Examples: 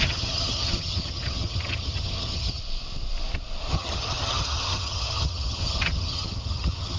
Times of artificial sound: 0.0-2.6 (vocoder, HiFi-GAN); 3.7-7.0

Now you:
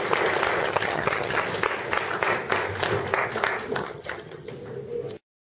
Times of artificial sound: 0.6-1.4 (vocoder, HiFi-GAN); 3.8-4.5

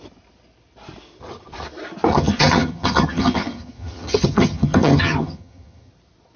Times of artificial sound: 2.1-5.9 (vocoder, HiFi-GAN)